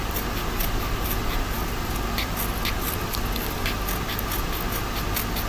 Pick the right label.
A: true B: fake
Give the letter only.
A